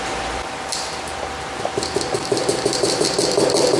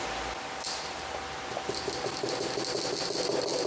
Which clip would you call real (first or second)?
second